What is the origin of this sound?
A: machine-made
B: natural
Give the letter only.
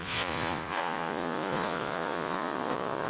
A